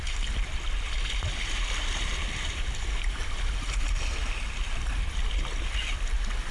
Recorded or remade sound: recorded